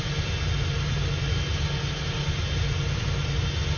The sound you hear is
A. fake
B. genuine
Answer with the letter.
B